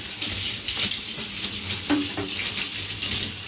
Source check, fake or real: fake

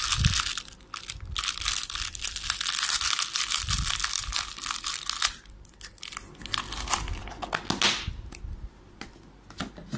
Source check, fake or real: real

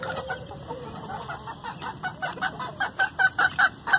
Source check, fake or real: fake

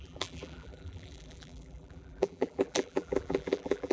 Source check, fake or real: fake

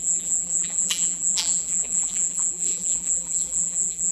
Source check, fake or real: fake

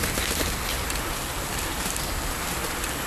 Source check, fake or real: real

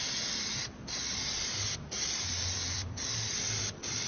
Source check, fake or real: fake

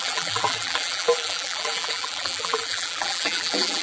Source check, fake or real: fake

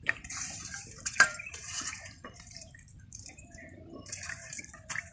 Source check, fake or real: fake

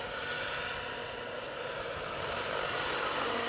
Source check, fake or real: fake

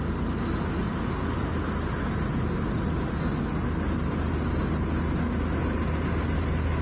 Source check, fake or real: real